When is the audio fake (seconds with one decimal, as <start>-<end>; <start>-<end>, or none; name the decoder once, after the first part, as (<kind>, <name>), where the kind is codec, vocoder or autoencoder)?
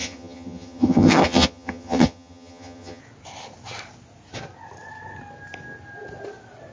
0.0-3.0 (vocoder, HiFi-GAN)